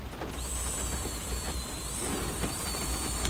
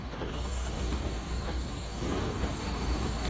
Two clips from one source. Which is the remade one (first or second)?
second